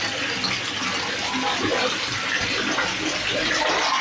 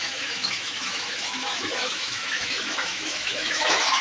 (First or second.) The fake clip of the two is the second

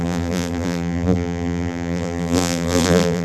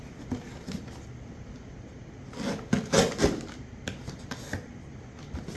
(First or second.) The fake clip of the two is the first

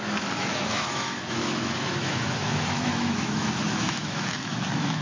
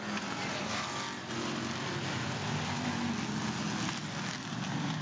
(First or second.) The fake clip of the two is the first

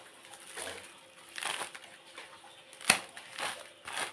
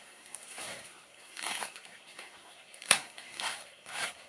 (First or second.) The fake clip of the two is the second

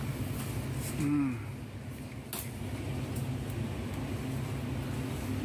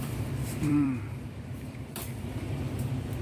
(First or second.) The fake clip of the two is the second